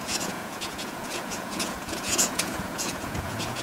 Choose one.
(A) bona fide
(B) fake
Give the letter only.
B